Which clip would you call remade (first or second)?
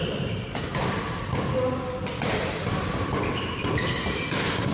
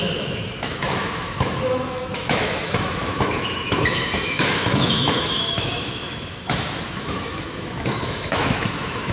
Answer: second